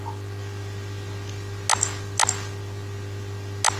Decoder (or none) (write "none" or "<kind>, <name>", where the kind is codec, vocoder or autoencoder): none